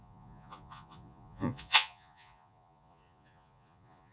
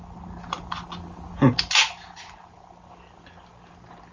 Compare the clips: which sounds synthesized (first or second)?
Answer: first